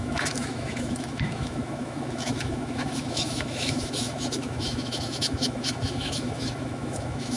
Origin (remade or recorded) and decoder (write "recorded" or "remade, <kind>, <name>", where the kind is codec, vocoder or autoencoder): remade, autoencoder, DAC-VAE